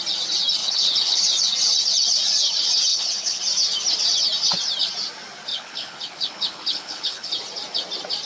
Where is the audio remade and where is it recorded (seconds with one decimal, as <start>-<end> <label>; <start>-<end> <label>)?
0.0-0.6 recorded; 0.6-1.2 remade; 1.2-2.9 recorded; 2.9-3.4 remade; 3.4-5.5 recorded; 5.5-7.3 remade; 7.3-8.3 recorded